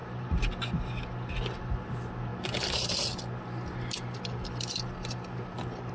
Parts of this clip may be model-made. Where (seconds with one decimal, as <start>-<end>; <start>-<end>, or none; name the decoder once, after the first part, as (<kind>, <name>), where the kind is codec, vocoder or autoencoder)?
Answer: 0.0-0.5 (vocoder, BigVGAN v2)